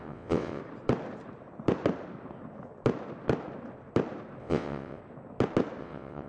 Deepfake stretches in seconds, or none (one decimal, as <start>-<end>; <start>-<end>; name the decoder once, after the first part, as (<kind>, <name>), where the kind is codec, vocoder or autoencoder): 0.0-0.6 (vocoder, WaveNeXt); 4.4-5.0; 5.8-6.3